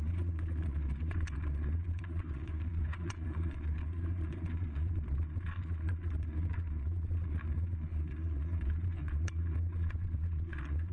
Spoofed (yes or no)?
yes